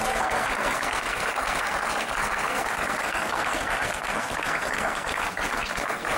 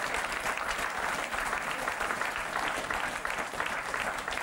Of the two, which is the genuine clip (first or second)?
second